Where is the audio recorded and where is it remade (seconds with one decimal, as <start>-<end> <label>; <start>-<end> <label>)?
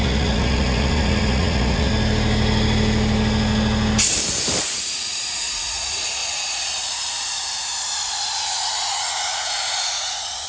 0.0-1.9 remade; 1.9-4.6 recorded; 4.6-6.2 remade; 6.2-7.9 recorded; 7.9-10.5 remade